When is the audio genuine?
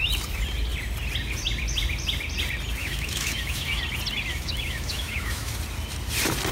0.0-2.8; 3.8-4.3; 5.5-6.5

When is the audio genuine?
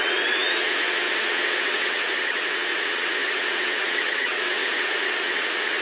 none